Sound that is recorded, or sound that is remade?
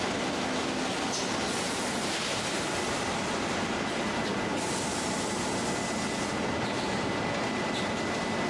recorded